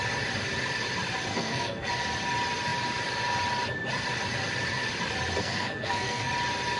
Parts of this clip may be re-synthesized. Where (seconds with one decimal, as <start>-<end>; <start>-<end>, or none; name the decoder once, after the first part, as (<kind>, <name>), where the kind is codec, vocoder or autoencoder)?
1.3-1.9 (codec, SNAC); 5.4-6.3